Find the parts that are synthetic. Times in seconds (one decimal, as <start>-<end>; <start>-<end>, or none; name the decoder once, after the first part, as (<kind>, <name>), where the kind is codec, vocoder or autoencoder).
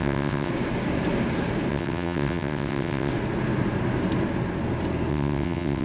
0.0-0.5 (vocoder, WaveNeXt); 1.7-3.1; 5.1-5.8